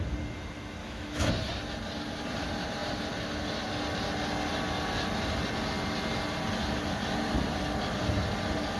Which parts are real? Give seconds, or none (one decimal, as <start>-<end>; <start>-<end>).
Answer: 0.0-0.8; 1.3-8.8